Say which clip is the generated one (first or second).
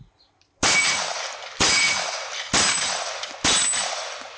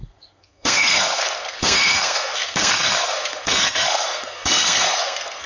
second